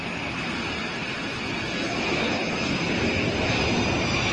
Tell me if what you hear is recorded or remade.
recorded